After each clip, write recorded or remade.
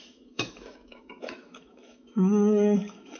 remade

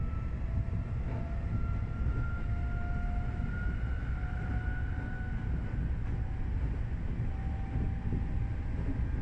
recorded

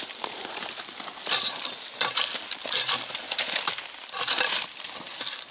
recorded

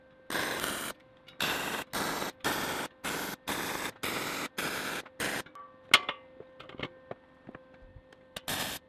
recorded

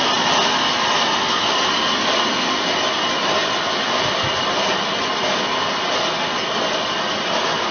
recorded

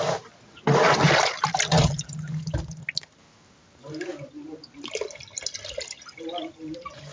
recorded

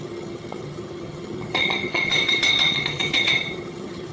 remade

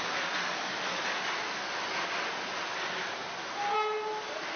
recorded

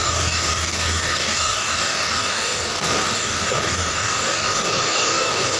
remade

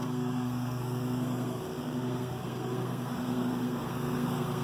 remade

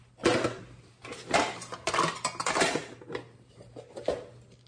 recorded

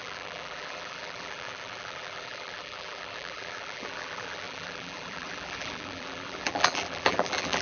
remade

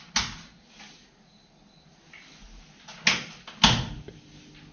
recorded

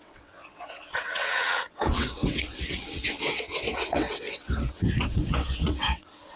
remade